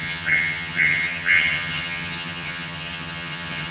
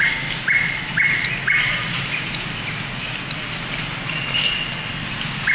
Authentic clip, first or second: second